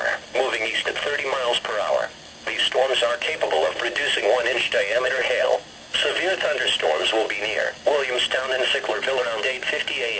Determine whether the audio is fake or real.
real